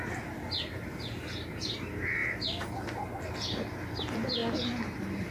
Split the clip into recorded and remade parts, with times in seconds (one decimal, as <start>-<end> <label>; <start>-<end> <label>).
0.0-2.2 remade; 2.2-3.2 recorded; 3.2-4.4 remade; 4.4-5.3 recorded